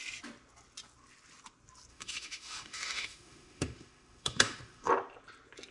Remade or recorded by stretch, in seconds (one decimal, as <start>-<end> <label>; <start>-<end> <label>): 0.0-1.9 recorded; 1.9-4.9 remade; 4.9-5.7 recorded